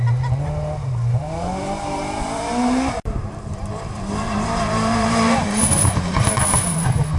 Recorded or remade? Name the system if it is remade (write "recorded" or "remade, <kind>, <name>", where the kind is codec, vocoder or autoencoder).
remade, vocoder, BigVGAN v2